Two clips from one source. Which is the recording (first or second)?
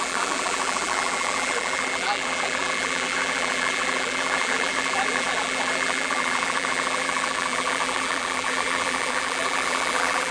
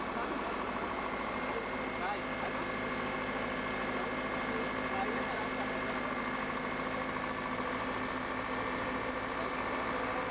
second